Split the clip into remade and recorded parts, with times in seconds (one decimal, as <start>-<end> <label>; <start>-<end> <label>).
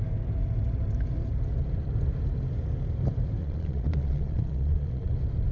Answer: 0.0-3.4 recorded; 3.4-5.1 remade; 5.1-5.5 recorded